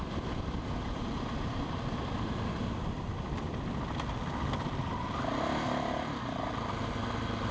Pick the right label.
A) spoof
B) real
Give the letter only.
B